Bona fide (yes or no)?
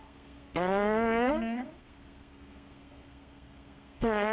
no